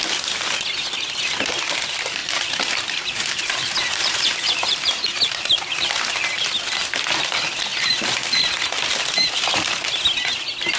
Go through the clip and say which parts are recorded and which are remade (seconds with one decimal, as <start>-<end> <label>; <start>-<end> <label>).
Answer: 0.0-2.2 recorded; 2.2-5.9 remade; 5.9-10.8 recorded